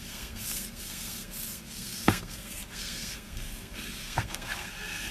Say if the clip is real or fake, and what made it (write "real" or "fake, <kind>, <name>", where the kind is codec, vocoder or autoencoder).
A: fake, codec, SNAC